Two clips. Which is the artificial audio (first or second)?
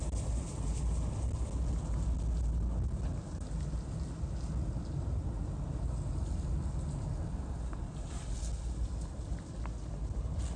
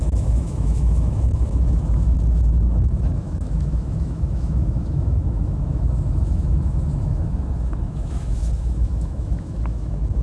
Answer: second